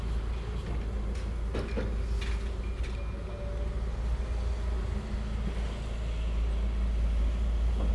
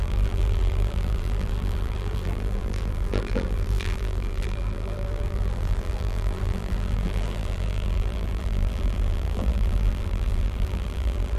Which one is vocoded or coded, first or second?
second